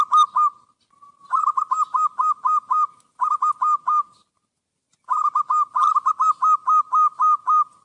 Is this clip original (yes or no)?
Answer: yes